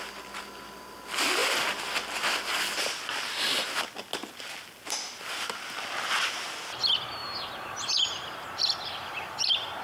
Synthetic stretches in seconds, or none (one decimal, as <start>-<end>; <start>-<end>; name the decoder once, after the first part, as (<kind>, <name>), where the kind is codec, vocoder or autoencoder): none